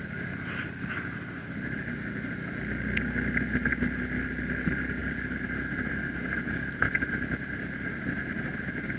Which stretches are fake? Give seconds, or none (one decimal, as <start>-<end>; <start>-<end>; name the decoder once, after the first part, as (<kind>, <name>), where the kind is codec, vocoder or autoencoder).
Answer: none